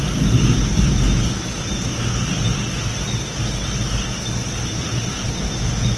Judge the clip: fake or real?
real